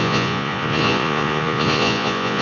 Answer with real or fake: fake